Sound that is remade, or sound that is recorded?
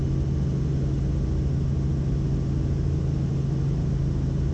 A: recorded